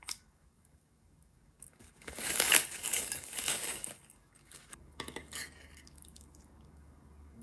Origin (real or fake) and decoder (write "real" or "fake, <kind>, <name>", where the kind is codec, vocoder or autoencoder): fake, codec, DAC